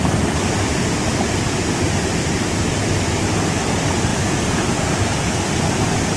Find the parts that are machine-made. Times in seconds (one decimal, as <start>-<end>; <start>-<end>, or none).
4.1-5.3